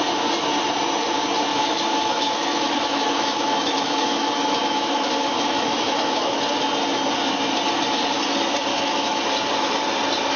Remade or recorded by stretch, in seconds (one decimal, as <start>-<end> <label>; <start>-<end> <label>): 0.0-1.5 recorded; 1.5-6.4 remade; 6.4-8.7 recorded; 8.7-9.2 remade; 9.2-10.4 recorded